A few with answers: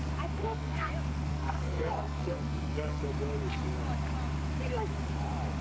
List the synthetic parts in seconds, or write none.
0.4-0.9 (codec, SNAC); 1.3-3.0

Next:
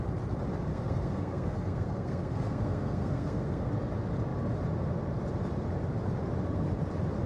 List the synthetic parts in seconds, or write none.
0.7-3.7 (codec, SNAC)

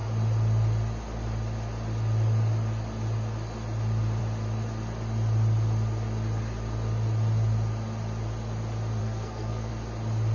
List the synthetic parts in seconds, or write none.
9.0-9.7 (codec, SNAC)

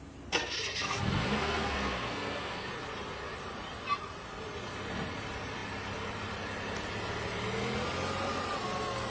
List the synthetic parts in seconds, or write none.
0.4-2.7 (codec, SNAC)

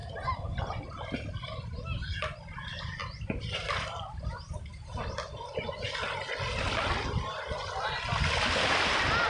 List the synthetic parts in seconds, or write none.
none